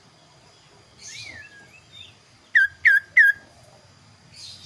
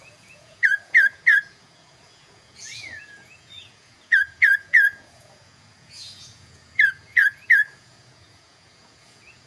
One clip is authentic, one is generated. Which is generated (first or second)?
second